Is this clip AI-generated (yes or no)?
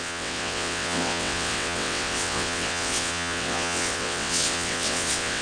yes